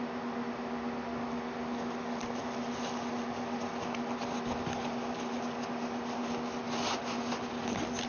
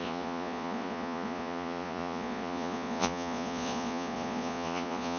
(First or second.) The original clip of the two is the first